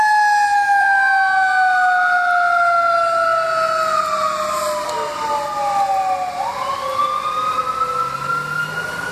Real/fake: real